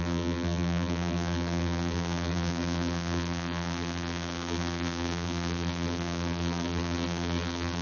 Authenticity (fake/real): fake